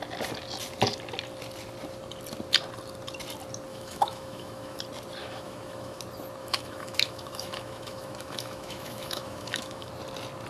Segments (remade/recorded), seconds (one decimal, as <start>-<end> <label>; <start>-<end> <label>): 0.0-3.7 recorded; 3.7-4.8 remade; 4.8-5.2 recorded; 5.2-6.0 remade; 6.0-6.4 recorded; 6.4-9.9 remade; 9.9-10.5 recorded